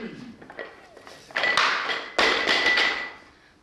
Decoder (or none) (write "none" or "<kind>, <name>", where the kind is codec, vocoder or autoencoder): none